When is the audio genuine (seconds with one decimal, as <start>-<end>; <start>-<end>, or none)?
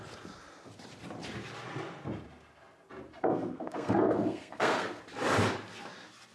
0.0-3.1; 5.0-6.3